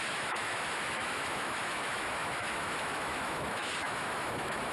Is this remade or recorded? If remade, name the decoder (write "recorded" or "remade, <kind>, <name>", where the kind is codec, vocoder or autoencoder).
remade, autoencoder, DAC-VAE